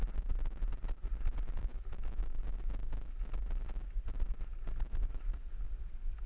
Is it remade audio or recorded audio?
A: recorded